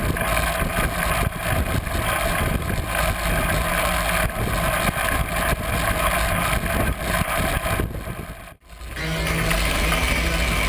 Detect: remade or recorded recorded